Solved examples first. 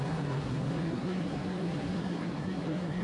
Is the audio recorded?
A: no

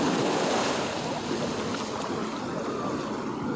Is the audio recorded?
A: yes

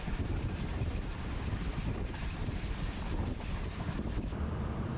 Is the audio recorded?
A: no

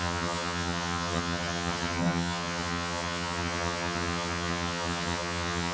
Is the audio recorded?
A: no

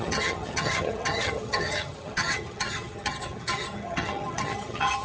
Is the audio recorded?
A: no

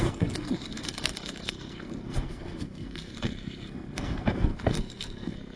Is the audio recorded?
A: no